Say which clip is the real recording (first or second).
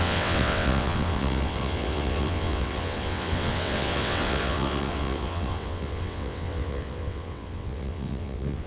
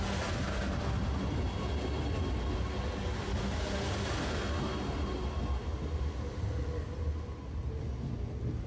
second